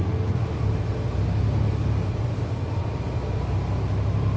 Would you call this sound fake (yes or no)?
no